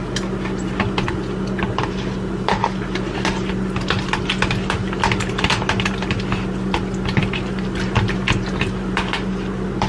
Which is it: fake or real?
real